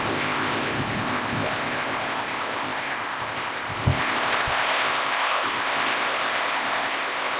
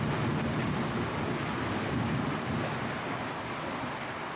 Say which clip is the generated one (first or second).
first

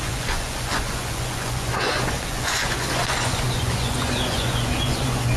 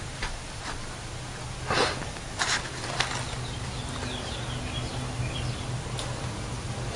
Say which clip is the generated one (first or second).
first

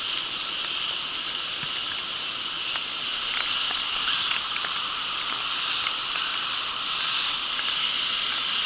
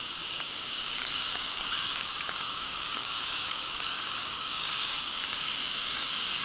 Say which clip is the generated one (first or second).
second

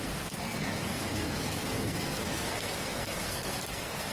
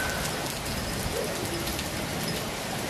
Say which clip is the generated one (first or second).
first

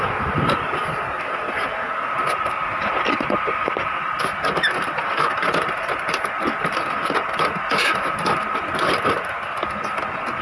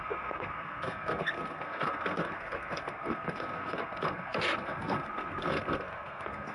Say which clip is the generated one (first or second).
second